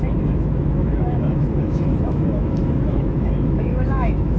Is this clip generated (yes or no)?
yes